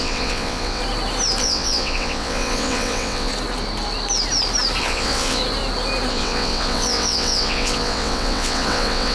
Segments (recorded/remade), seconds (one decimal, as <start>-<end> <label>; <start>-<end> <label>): 0.0-0.8 remade; 0.8-1.4 recorded; 1.4-3.3 remade; 3.3-4.8 recorded; 4.8-5.4 remade; 5.4-6.1 recorded; 6.1-9.1 remade